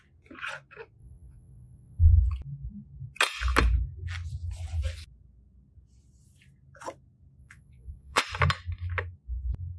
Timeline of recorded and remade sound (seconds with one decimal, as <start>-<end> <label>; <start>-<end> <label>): 0.0-1.0 recorded; 1.0-2.1 remade; 2.1-7.4 recorded; 7.4-8.2 remade; 8.2-9.8 recorded